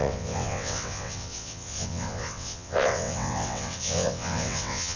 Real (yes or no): no